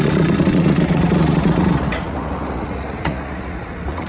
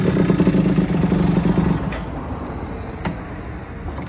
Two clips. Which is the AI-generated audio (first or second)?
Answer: first